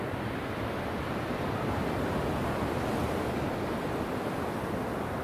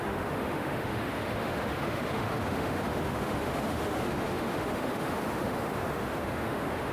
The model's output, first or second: second